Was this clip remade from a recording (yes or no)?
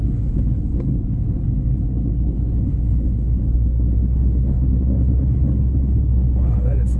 yes